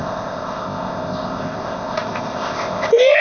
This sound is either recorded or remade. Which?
remade